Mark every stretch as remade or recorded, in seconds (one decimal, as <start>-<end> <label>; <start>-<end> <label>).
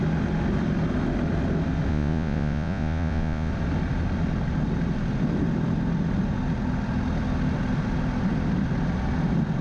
0.0-1.9 recorded; 1.9-3.5 remade; 3.5-9.6 recorded